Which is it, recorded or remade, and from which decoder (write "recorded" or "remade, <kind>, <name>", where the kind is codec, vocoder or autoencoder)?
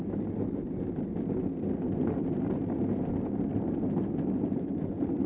recorded